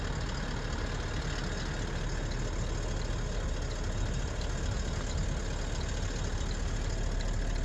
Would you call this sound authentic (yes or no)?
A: yes